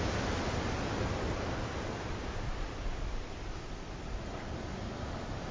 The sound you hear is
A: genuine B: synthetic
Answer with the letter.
A